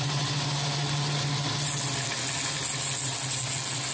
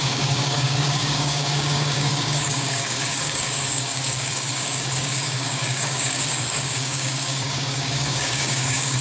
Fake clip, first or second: second